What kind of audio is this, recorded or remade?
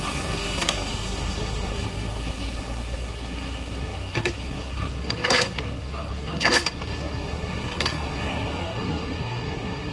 remade